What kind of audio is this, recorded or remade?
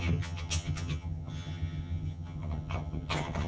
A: remade